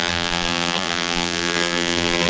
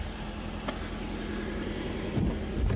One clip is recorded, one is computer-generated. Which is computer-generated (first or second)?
first